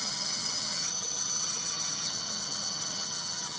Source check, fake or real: fake